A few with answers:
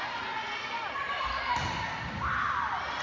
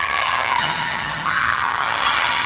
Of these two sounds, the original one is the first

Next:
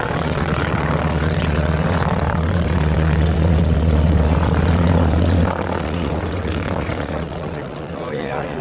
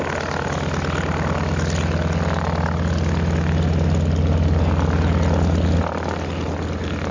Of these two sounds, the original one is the second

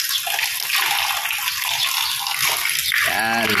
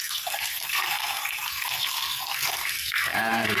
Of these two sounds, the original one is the first